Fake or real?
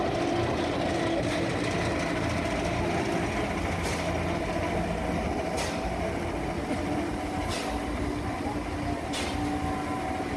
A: real